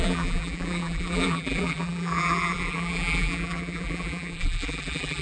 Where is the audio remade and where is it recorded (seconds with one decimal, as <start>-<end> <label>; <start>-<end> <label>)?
0.0-5.2 remade